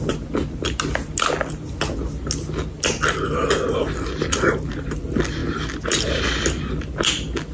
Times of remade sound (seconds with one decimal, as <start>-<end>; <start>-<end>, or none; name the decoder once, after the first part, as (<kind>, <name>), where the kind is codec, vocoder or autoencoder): none